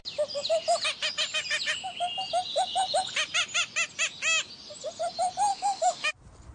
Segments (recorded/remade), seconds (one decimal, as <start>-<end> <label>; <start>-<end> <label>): 0.0-5.5 recorded; 5.5-6.1 remade; 6.1-6.5 recorded